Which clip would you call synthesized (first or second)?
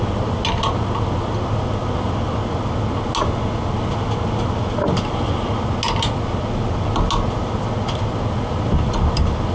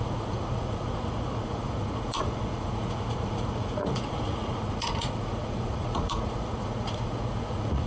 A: second